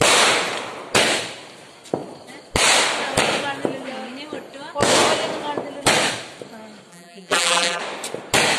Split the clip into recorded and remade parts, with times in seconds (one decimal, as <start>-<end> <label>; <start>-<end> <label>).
0.0-6.9 recorded; 6.9-7.8 remade; 7.8-8.6 recorded